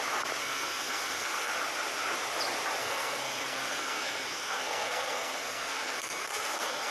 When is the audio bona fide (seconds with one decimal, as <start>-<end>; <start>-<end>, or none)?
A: 0.0-0.4; 1.5-2.8